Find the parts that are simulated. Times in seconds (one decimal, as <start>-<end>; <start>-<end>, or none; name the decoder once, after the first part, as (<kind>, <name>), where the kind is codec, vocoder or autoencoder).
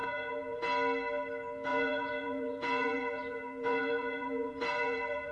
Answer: 0.0-0.6 (vocoder, Vocos); 1.7-5.3